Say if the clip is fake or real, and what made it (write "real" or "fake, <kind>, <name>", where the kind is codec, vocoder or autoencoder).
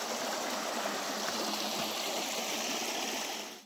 real